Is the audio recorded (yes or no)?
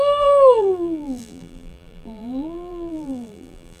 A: no